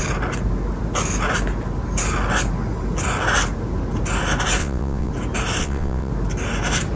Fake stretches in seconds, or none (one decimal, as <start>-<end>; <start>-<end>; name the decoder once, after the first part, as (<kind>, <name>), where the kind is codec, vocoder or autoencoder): 4.6-5.1 (vocoder, WaveNeXt); 5.6-6.1